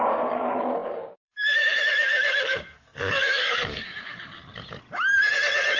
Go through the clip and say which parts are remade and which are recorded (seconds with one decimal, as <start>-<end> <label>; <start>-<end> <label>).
0.0-4.4 remade; 4.4-5.8 recorded

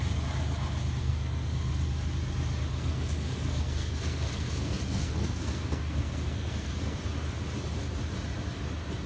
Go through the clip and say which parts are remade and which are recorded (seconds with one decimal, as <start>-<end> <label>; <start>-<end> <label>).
0.0-1.0 recorded; 1.0-1.7 remade; 1.7-2.7 recorded; 2.7-7.0 remade; 7.0-9.1 recorded

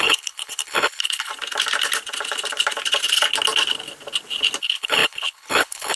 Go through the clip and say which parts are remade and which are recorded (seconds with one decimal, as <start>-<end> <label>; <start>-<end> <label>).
0.0-1.3 remade; 1.3-4.6 recorded; 4.6-6.0 remade

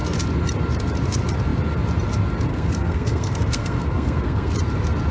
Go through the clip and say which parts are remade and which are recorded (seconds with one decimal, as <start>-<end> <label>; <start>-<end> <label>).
0.0-2.5 recorded; 2.5-4.5 remade; 4.5-5.1 recorded

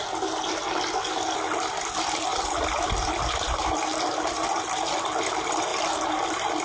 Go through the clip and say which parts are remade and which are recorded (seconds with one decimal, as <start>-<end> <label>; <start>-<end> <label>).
0.0-2.3 recorded; 2.3-4.7 remade; 4.7-5.7 recorded; 5.7-6.6 remade